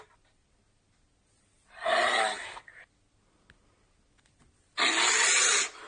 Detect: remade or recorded recorded